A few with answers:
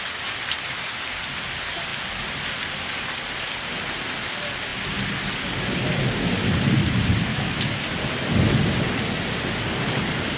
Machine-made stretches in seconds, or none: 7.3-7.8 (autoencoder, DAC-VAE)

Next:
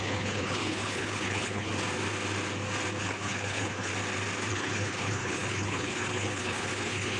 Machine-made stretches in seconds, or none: 0.0-1.7 (codec, HILCodec); 3.0-3.9; 4.5-7.2

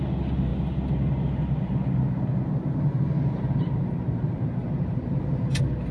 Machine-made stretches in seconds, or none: 4.6-5.4 (vocoder, BigVGAN v2)